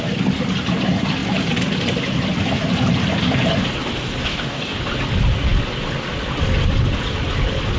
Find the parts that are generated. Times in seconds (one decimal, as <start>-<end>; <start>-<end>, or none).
4.3-4.8